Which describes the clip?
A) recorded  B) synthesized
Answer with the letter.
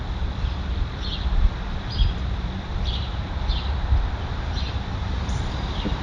B